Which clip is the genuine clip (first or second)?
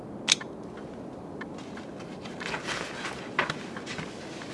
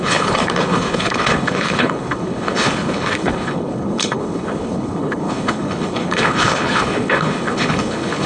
first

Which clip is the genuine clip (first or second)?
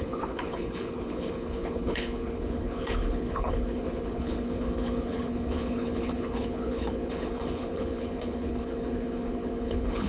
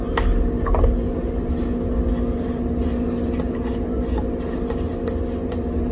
second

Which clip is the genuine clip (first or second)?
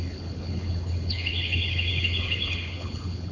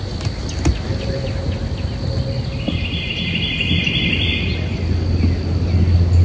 second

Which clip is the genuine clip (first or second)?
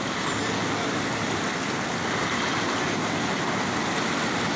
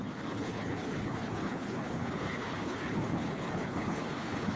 first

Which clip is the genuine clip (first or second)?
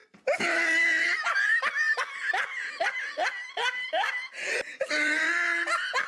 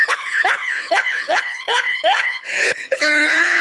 first